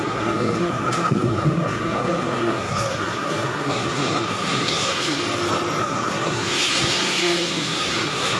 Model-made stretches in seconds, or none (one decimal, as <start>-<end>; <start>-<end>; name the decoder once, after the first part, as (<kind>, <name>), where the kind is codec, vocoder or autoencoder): 0.0-5.2 (codec, SNAC); 5.8-8.4